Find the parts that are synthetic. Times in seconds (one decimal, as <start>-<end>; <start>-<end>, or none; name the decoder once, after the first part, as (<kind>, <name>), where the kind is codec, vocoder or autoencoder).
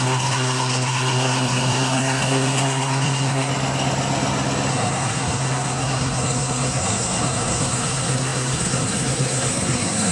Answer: 0.0-3.5 (codec, SNAC); 4.7-10.1